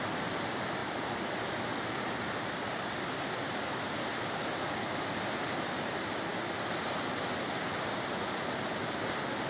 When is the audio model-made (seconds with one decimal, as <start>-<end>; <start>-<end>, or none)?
none